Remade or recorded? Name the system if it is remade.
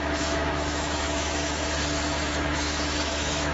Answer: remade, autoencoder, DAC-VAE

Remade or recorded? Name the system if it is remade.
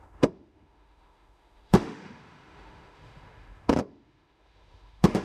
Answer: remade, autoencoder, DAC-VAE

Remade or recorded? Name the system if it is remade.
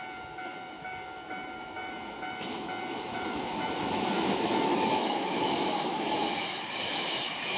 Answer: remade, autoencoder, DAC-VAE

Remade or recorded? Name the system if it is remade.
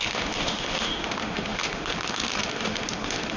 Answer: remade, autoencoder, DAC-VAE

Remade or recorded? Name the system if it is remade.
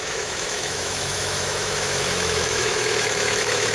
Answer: remade, autoencoder, DAC-VAE